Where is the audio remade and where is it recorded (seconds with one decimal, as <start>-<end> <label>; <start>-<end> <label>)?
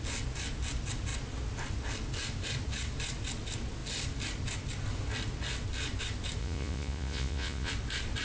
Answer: 0.0-6.4 recorded; 6.4-7.7 remade; 7.7-8.2 recorded